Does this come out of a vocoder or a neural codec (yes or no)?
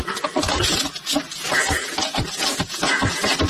no